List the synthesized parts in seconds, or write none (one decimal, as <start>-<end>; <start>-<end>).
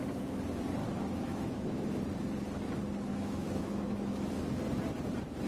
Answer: 0.8-2.0; 3.1-4.4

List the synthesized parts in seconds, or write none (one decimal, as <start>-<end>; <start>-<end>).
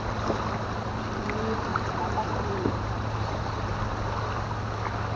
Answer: 1.7-3.4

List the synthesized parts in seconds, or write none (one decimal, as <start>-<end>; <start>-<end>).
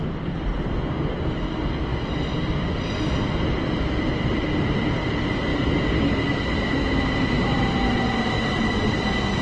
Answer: none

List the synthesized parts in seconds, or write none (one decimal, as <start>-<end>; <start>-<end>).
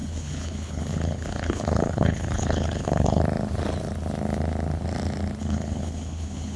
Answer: 0.0-3.2; 5.4-6.6